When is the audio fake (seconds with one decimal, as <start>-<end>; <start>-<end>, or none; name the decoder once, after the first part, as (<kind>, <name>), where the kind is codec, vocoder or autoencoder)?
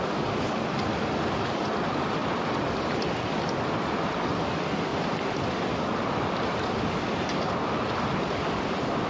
none